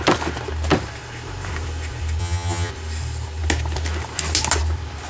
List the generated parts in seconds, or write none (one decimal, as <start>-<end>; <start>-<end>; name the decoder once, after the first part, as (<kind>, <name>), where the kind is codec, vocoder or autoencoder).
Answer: 2.2-2.7 (vocoder, HiFi-GAN)